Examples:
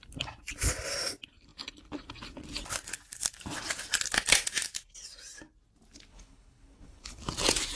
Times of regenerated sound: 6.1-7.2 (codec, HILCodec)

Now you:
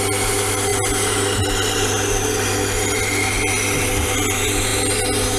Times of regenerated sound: none

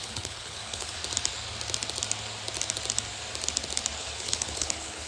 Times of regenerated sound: 0.0-1.0 (codec, HILCodec); 4.0-5.1

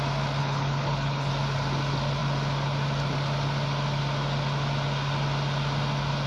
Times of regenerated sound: 0.4-1.3 (codec, HILCodec)

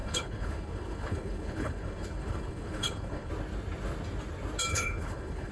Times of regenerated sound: 0.0-3.3 (codec, HILCodec); 4.7-5.5

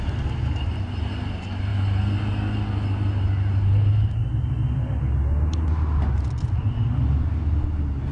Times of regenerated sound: none

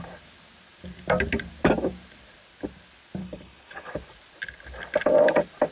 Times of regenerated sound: 3.2-3.9 (codec, HILCodec)